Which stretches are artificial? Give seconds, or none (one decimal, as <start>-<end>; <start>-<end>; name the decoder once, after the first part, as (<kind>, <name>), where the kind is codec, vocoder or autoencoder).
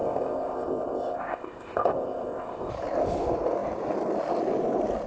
0.0-2.7 (codec, ZipCodec)